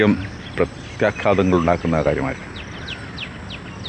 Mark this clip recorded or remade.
recorded